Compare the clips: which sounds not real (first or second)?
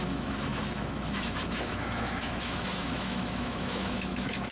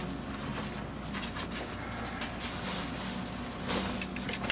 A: first